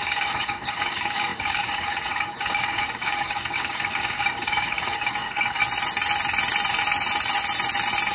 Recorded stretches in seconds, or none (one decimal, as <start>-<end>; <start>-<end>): 5.6-8.1